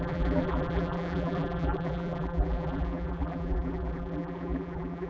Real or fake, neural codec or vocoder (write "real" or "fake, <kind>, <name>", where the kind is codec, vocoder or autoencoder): fake, vocoder, BigVGAN v2